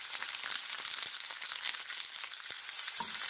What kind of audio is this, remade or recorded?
recorded